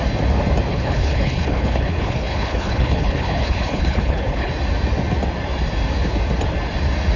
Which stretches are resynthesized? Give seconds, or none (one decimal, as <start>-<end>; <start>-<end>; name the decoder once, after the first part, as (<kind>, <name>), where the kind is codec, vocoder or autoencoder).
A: 0.7-4.5 (codec, HILCodec)